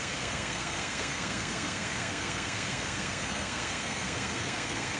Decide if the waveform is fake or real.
fake